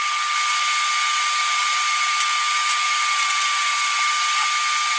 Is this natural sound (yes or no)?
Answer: yes